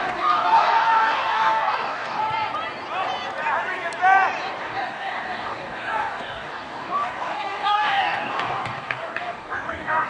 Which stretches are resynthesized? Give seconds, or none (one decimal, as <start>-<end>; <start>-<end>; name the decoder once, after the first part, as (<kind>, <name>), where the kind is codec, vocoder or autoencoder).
0.0-2.2 (codec, DAC); 4.6-10.1